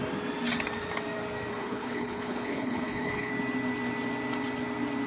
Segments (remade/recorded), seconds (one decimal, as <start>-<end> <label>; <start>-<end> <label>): 0.0-1.5 recorded; 1.5-3.3 remade; 3.3-5.1 recorded